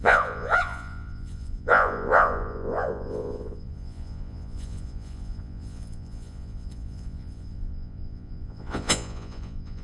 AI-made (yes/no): yes